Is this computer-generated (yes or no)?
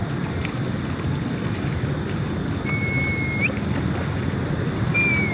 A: no